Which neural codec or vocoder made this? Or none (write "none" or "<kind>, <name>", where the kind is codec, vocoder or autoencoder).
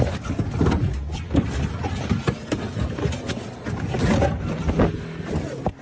none